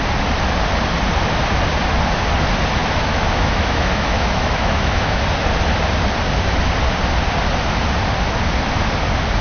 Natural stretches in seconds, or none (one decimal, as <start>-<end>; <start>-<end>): 0.0-2.8; 5.2-9.4